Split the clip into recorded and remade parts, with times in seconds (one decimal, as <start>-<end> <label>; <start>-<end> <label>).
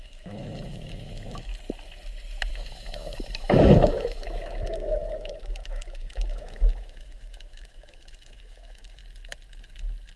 0.0-1.5 remade; 1.5-2.5 recorded; 2.5-9.0 remade; 9.0-10.2 recorded